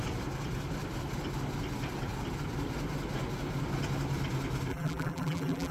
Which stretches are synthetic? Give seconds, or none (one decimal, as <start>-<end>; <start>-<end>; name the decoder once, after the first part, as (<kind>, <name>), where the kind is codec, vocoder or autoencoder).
4.7-5.7 (vocoder, BigVGAN v2)